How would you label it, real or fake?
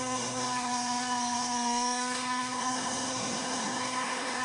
fake